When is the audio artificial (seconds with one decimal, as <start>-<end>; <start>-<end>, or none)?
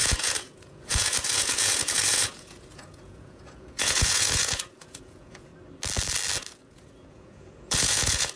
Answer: 0.0-5.5; 6.6-8.4